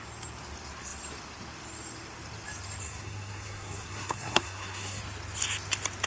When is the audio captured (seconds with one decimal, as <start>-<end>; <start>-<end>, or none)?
0.0-2.8; 5.0-6.1